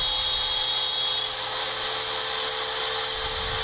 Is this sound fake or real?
real